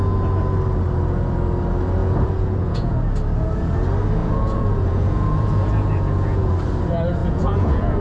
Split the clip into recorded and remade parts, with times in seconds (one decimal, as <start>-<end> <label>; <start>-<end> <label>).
0.0-2.0 recorded; 2.0-2.9 remade; 2.9-4.2 recorded; 4.2-6.5 remade; 6.5-7.2 recorded; 7.2-8.0 remade